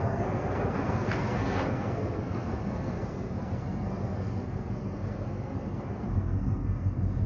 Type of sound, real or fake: fake